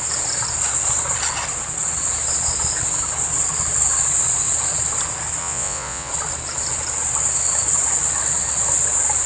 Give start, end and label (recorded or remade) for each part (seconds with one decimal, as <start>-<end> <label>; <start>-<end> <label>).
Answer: 0.0-5.4 recorded; 5.4-6.1 remade; 6.1-9.3 recorded